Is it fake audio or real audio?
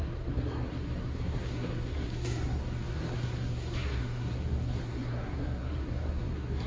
fake